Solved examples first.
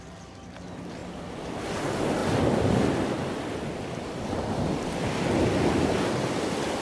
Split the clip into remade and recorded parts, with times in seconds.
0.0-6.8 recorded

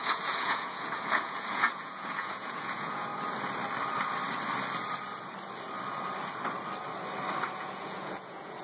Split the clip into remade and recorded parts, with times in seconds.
0.0-3.1 remade; 3.1-7.5 recorded; 7.5-8.6 remade

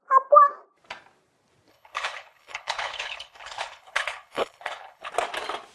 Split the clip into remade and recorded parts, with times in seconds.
0.0-1.7 recorded; 1.7-5.1 remade; 5.1-5.7 recorded

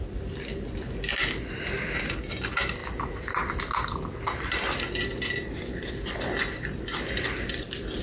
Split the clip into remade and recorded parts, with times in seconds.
0.0-8.0 recorded

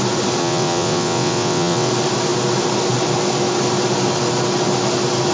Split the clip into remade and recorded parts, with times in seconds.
0.0-0.4 recorded; 0.4-1.9 remade; 1.9-5.3 recorded

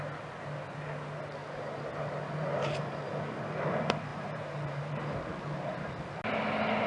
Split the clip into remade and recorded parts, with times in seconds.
0.0-1.4 recorded; 1.4-1.9 remade; 1.9-2.4 recorded; 2.4-3.0 remade; 3.0-4.1 recorded; 4.1-5.2 remade; 5.2-6.9 recorded

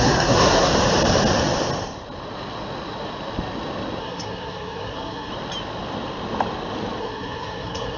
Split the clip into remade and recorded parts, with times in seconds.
0.0-0.7 remade; 0.7-4.0 recorded; 4.0-5.3 remade; 5.3-7.0 recorded; 7.0-8.0 remade

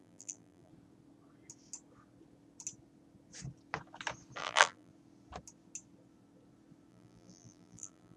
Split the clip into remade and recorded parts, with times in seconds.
0.0-0.7 remade; 0.7-4.4 recorded; 4.4-4.9 remade; 4.9-6.9 recorded; 6.9-8.2 remade